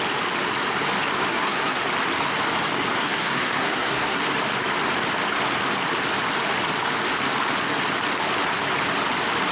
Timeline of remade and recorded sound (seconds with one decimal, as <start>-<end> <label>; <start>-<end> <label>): 0.0-1.3 recorded; 1.3-1.8 remade; 1.8-3.0 recorded; 3.0-4.2 remade; 4.2-9.5 recorded